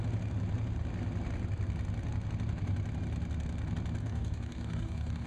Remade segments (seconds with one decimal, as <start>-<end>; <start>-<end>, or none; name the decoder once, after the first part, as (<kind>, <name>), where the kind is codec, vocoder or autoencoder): 4.0-5.3 (codec, DAC)